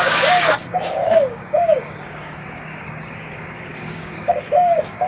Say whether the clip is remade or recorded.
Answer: remade